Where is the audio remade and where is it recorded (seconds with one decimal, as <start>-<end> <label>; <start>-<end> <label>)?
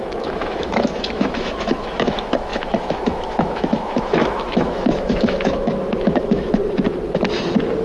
0.0-6.6 remade; 6.6-7.8 recorded